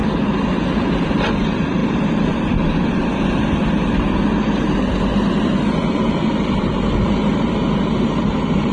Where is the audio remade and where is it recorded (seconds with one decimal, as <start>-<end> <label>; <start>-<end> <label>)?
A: 0.0-5.1 recorded; 5.1-7.5 remade; 7.5-8.7 recorded